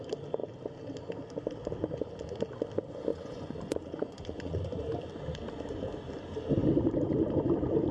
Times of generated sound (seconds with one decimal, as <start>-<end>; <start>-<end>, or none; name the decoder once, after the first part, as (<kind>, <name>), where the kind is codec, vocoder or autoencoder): 3.1-4.8 (vocoder, Vocos)